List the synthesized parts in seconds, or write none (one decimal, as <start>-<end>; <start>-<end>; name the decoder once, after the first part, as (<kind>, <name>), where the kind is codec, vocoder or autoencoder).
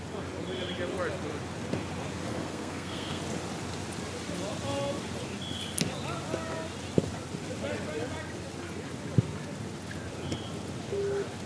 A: 2.3-3.2 (codec, SNAC)